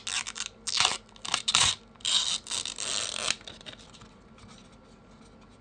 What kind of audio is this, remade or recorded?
recorded